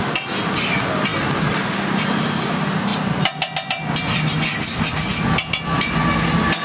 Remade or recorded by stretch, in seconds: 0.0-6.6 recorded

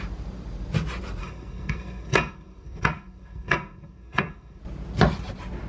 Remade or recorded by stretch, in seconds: 0.0-1.2 recorded; 1.2-4.6 remade; 4.6-5.7 recorded

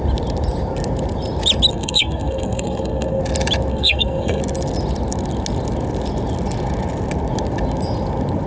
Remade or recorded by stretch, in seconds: 0.0-1.7 recorded; 1.7-3.2 remade; 3.2-3.7 recorded; 3.7-4.4 remade; 4.4-8.5 recorded

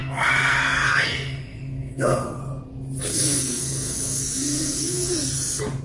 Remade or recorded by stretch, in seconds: 0.0-2.4 remade; 2.4-3.1 recorded; 3.1-5.1 remade; 5.1-5.8 recorded

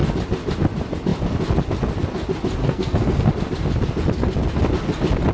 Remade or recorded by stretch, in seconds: 0.0-2.6 recorded; 2.6-3.3 remade; 3.3-5.3 recorded

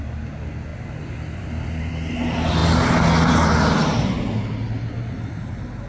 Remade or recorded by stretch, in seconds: 0.0-5.9 recorded

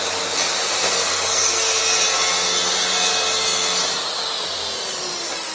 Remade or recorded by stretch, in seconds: 0.0-0.8 recorded; 0.8-1.8 remade; 1.8-5.5 recorded